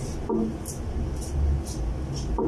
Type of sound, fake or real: real